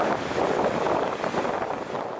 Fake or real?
real